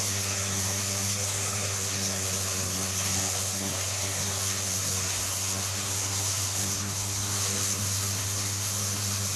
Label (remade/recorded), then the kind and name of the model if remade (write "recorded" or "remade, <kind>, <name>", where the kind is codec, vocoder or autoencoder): remade, codec, SNAC